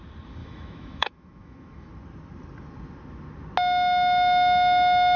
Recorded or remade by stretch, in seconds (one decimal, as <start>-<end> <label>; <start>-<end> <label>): 0.0-0.4 recorded; 0.4-1.9 remade; 1.9-5.2 recorded